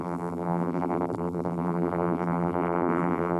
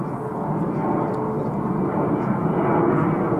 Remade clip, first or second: first